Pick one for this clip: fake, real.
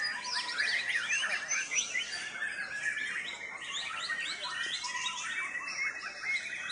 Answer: real